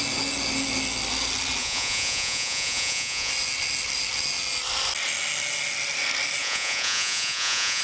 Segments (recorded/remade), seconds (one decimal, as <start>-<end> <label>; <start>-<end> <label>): 0.0-1.6 recorded; 1.6-3.3 remade; 3.3-6.4 recorded; 6.4-7.8 remade